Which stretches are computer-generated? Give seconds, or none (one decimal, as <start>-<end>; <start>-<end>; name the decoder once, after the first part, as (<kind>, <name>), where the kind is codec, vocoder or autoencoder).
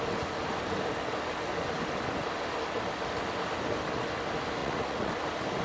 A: 4.6-5.1 (vocoder, Vocos)